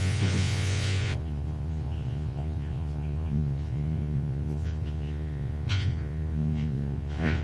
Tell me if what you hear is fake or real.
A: fake